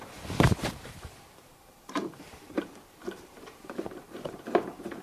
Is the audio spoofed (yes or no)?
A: yes